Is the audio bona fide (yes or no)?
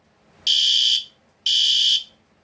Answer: yes